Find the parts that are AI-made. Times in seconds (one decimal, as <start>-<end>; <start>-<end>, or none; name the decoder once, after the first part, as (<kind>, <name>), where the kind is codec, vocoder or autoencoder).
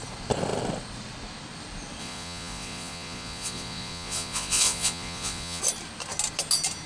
2.0-5.6 (vocoder, Vocos)